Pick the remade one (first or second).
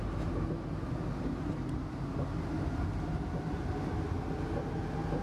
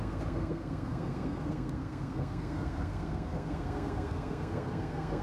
second